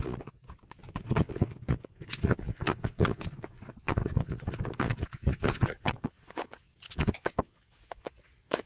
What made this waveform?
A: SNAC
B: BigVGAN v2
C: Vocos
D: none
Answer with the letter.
C